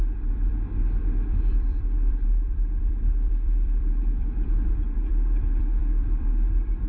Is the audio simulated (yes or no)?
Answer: yes